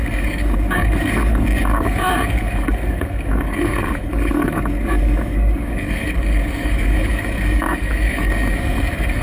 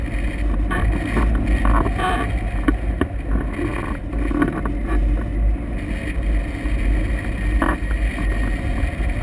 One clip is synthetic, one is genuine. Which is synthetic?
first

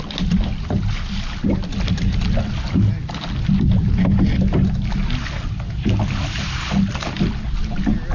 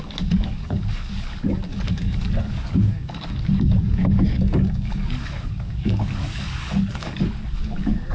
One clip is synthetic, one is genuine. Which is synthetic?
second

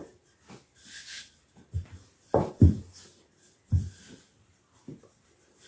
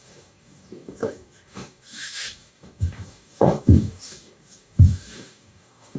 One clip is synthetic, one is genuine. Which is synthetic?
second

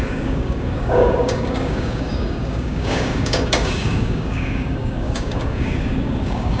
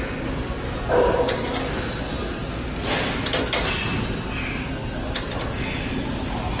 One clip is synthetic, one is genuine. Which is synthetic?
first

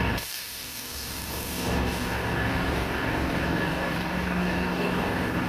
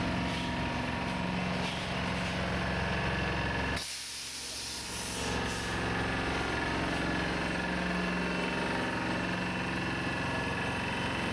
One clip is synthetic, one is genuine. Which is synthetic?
first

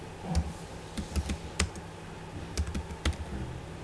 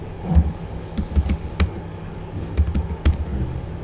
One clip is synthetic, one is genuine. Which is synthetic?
second